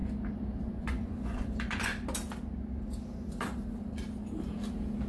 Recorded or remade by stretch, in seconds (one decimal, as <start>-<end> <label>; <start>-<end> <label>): 0.0-0.6 recorded; 0.6-1.9 remade; 1.9-5.1 recorded

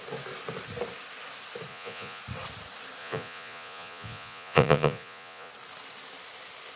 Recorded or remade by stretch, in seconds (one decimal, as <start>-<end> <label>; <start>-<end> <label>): 0.0-1.7 recorded; 1.7-2.2 remade; 2.2-3.0 recorded; 3.0-5.5 remade; 5.5-6.8 recorded

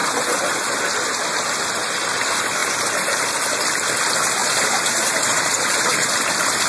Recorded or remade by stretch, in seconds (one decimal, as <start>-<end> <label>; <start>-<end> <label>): 0.0-0.8 remade; 0.8-4.4 recorded; 4.4-6.1 remade; 6.1-6.7 recorded

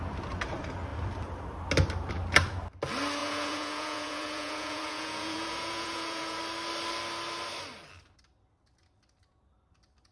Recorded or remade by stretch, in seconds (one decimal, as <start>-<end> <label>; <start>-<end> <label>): 0.0-3.2 recorded; 3.2-6.4 remade; 6.4-10.1 recorded

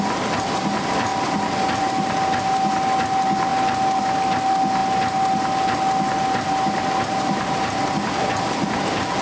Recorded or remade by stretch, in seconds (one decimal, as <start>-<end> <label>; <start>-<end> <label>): 0.0-9.2 recorded

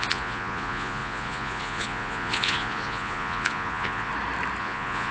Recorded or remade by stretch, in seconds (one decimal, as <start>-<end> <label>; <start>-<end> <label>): 0.0-4.1 remade; 4.1-4.6 recorded; 4.6-5.1 remade

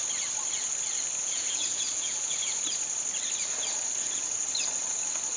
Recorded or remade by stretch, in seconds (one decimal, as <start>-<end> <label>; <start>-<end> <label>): 0.0-1.2 recorded; 1.2-2.6 remade; 2.6-5.4 recorded